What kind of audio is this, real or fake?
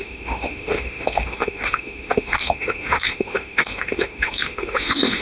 fake